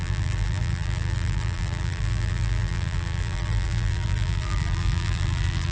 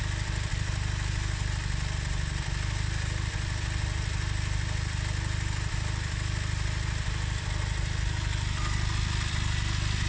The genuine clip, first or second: second